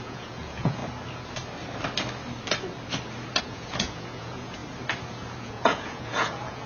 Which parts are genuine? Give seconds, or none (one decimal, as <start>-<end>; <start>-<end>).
0.8-3.4; 4.6-5.4